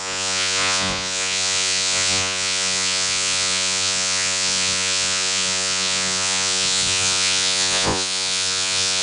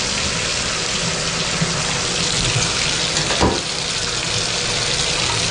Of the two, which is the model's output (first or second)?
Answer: first